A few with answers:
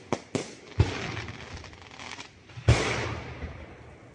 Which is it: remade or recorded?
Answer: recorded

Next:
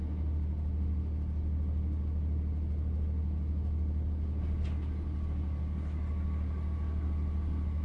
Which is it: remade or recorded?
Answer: recorded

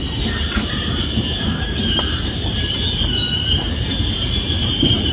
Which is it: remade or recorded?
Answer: remade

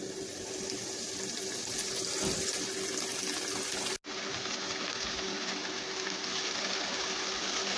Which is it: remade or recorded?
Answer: recorded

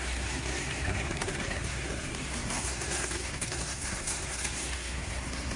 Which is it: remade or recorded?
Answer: remade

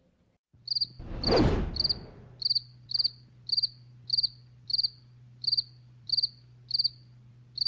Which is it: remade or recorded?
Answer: recorded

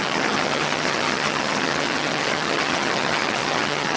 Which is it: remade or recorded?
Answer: remade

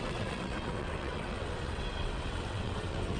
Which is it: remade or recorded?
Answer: remade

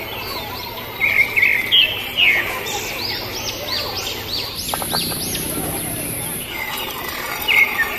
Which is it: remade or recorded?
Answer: recorded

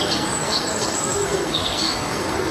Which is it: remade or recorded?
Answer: remade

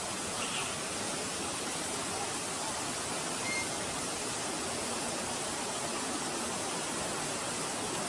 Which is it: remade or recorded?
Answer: recorded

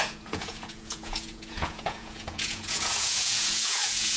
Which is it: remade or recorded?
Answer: remade